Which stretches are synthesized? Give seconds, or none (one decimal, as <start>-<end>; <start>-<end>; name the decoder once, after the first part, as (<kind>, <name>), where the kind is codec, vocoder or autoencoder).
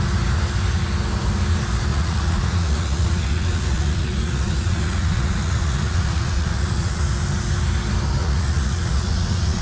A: 1.9-7.0 (vocoder, Vocos); 8.2-9.6